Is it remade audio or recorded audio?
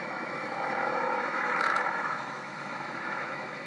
remade